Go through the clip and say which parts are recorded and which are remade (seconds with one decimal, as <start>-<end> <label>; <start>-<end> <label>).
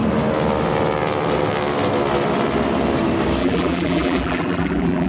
0.0-3.4 recorded; 3.4-5.1 remade